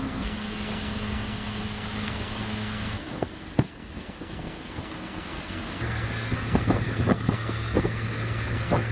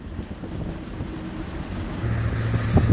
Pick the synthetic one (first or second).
first